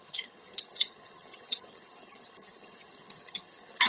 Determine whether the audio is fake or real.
fake